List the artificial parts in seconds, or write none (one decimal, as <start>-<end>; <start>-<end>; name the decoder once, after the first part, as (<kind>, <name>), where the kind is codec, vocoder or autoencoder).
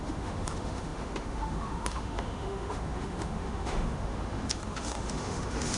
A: 0.0-5.8 (autoencoder, DAC-VAE)